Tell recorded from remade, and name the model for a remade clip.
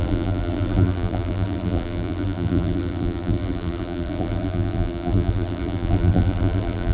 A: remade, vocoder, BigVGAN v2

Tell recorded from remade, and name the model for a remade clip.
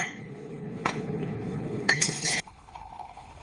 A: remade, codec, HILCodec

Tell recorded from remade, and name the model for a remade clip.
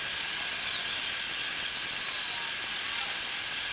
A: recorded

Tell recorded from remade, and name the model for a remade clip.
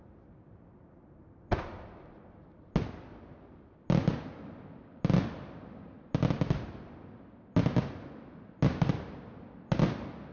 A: recorded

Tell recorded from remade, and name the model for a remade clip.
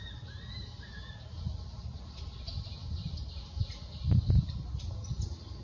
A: recorded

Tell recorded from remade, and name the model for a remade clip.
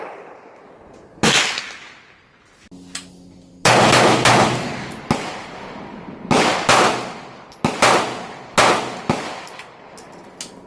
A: recorded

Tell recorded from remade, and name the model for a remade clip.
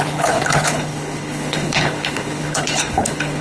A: remade, codec, HILCodec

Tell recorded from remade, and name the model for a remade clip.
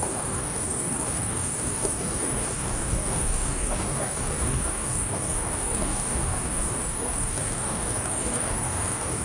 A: remade, codec, DAC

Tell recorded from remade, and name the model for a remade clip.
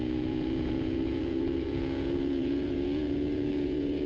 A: remade, vocoder, Vocos